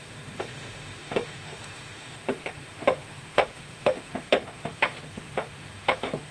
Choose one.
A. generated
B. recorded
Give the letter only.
A